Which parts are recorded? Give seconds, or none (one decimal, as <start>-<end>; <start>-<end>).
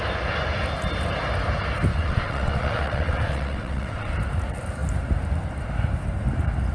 0.0-1.9; 4.1-6.7